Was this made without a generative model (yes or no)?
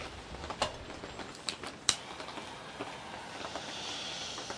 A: yes